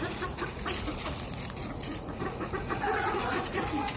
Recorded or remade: remade